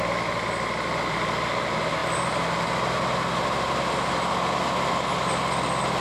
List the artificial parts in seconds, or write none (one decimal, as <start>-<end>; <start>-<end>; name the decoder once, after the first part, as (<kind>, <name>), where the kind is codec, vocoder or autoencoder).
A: none